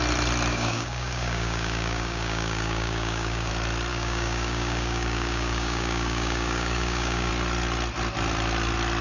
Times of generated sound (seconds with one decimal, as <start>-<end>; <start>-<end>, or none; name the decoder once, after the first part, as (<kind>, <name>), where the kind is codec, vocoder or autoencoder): 0.5-3.5 (codec, DAC); 3.9-7.3